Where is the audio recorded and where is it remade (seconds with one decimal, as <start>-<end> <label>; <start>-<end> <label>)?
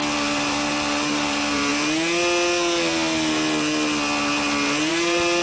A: 0.0-1.7 remade; 1.7-4.9 recorded; 4.9-5.4 remade